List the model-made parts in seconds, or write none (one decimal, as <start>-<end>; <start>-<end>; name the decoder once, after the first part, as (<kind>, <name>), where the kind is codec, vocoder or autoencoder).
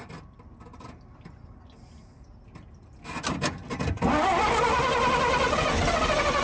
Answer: none